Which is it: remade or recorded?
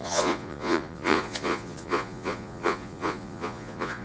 remade